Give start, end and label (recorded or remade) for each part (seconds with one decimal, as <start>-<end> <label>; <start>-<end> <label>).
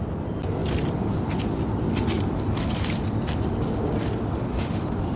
0.0-4.5 recorded; 4.5-5.2 remade